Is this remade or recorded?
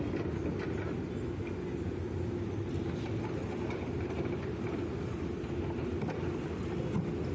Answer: recorded